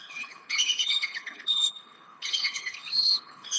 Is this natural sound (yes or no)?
no